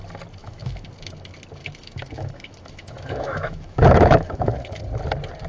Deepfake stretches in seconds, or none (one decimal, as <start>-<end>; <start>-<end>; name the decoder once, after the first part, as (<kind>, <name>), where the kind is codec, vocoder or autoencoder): 0.4-0.9 (autoencoder, DAC-VAE); 1.6-4.8